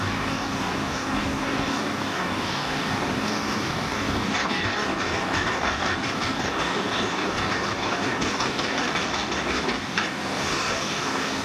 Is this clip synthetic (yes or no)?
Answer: yes